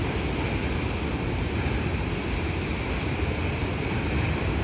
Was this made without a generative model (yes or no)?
yes